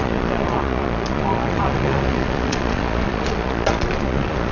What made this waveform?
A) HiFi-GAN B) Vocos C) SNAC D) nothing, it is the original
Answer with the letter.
B